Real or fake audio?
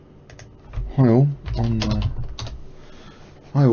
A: real